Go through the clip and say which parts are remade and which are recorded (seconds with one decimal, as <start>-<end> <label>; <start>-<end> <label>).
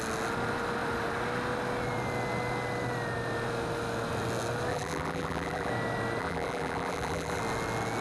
0.0-4.7 recorded; 4.7-5.7 remade; 5.7-6.2 recorded; 6.2-7.4 remade; 7.4-8.0 recorded